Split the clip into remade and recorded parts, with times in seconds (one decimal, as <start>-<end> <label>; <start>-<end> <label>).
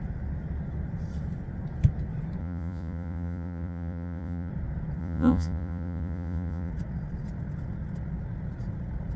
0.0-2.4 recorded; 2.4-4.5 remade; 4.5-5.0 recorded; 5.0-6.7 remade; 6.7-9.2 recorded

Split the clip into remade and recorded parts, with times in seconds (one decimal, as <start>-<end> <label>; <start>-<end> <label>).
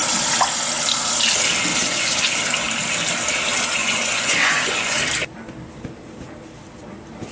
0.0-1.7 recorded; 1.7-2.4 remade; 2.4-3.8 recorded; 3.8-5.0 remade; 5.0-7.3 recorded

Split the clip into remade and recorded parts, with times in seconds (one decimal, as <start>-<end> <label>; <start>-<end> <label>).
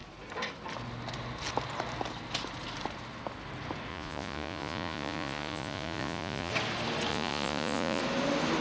0.0-3.9 recorded; 3.9-6.5 remade; 6.5-7.1 recorded; 7.1-8.0 remade; 8.0-8.6 recorded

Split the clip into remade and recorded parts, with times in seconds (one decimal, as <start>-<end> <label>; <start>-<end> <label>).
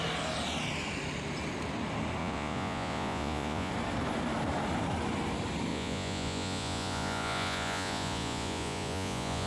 0.0-2.2 recorded; 2.2-3.7 remade; 3.7-5.7 recorded; 5.7-9.5 remade